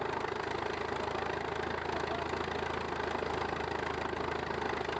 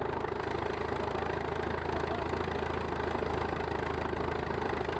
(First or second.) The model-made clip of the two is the second